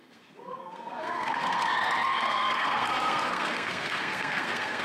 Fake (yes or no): yes